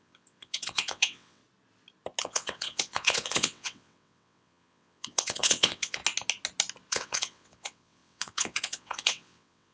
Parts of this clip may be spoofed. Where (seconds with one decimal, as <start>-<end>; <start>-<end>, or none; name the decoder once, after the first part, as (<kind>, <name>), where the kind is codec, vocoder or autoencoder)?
0.0-1.4 (vocoder, WaveNeXt); 2.2-6.0; 6.9-9.7